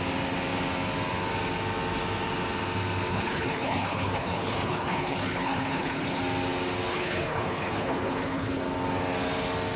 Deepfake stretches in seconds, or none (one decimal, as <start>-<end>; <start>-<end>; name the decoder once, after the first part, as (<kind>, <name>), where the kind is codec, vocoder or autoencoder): 3.1-6.2 (codec, HILCodec); 6.9-8.6